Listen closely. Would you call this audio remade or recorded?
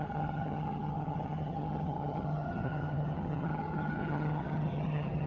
remade